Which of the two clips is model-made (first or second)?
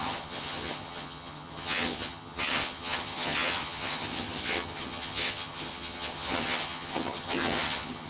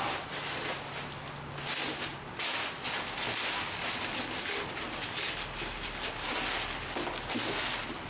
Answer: first